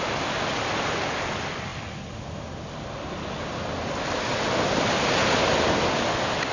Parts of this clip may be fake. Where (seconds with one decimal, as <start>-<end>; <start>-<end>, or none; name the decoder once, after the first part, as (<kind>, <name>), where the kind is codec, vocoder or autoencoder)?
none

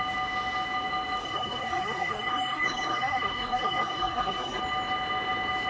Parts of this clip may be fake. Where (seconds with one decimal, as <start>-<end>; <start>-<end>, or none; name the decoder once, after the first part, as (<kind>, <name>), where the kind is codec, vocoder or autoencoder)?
1.2-4.6 (codec, SNAC)

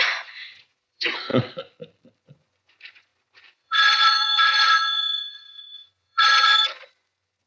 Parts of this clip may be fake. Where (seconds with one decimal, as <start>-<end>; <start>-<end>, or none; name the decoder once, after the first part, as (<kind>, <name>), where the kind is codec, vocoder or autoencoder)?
0.0-1.3 (vocoder, Vocos); 2.2-7.5